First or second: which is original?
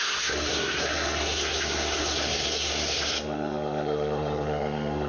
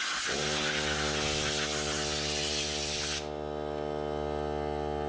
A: second